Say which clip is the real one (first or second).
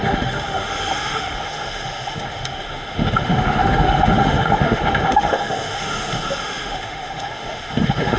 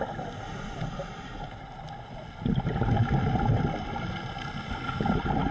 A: second